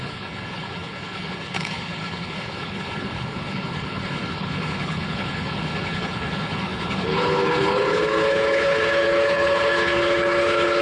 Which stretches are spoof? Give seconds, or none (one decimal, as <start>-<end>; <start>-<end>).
0.0-10.8